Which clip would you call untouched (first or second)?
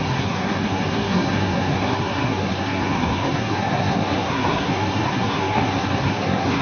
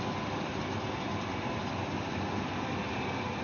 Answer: second